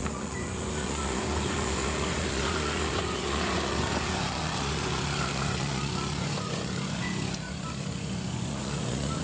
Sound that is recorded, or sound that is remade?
remade